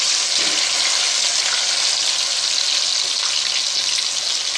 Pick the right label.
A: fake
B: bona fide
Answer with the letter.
B